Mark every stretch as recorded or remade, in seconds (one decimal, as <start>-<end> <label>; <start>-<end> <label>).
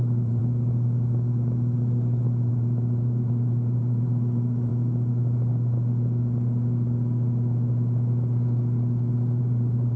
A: 0.0-0.4 remade; 0.4-2.5 recorded; 2.5-4.7 remade; 4.7-9.4 recorded; 9.4-10.0 remade